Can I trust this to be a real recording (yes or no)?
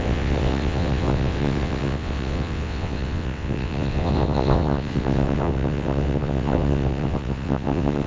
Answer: no